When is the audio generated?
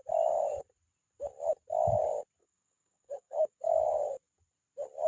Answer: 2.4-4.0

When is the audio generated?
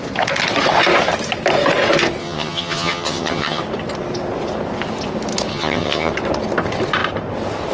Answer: 2.2-3.6; 5.5-6.1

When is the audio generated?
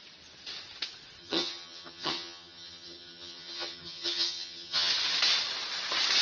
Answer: 1.2-4.9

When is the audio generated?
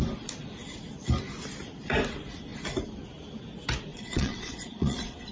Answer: 3.9-5.3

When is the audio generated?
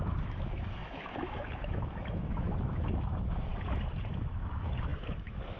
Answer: 0.0-3.5; 4.1-5.6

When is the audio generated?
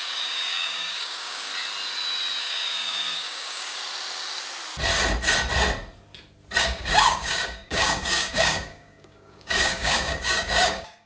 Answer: 0.0-1.5; 2.4-3.8; 6.6-11.1